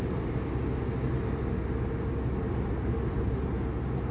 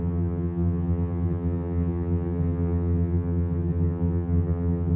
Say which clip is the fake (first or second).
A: second